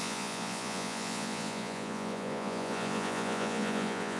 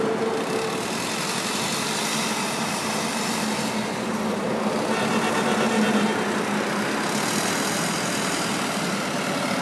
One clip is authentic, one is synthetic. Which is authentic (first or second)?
second